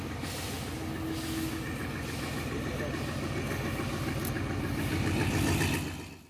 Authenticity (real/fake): real